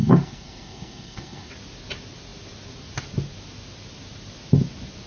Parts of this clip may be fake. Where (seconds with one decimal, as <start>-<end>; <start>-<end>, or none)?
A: 0.0-1.5

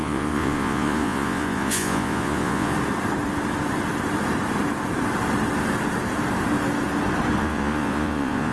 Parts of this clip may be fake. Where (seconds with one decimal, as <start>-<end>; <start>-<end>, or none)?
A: 0.0-2.7; 7.4-8.5